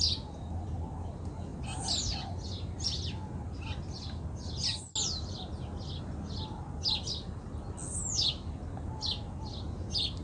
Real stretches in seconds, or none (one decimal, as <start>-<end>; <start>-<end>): 0.0-10.2

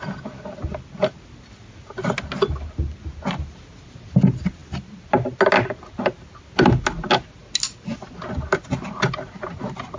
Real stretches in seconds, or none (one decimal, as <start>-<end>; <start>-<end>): 0.0-10.0

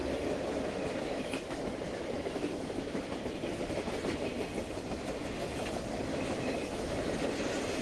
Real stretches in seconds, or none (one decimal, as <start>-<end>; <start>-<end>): 3.2-6.1; 6.9-7.8

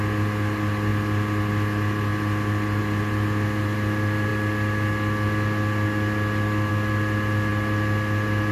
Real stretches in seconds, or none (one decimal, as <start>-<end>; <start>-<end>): 0.0-8.5

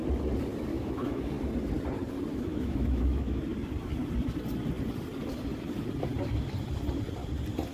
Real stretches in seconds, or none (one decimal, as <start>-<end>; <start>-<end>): 0.0-0.7; 1.3-2.3; 3.4-7.7

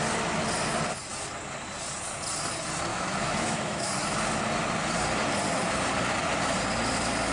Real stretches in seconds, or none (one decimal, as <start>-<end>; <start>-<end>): 0.0-2.9; 3.9-7.3

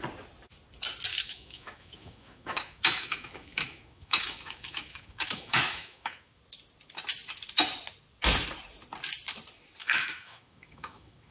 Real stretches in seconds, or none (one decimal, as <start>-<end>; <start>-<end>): 0.0-1.1; 6.4-9.8